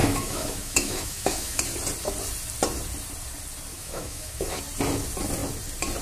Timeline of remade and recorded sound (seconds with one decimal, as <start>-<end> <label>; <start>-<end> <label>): 0.0-1.6 remade; 1.6-3.7 recorded; 3.7-4.6 remade; 4.6-6.0 recorded